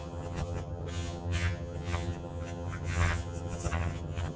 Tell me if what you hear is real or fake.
fake